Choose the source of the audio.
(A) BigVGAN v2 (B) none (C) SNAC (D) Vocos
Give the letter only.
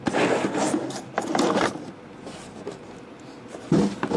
B